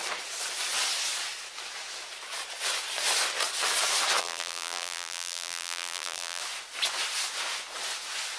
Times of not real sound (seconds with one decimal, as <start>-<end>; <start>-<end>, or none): 4.2-6.4